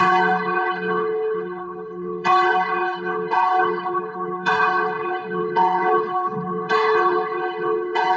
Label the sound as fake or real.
fake